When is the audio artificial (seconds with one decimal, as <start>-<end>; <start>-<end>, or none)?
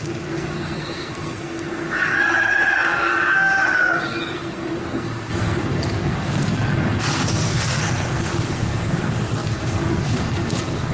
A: 0.0-10.9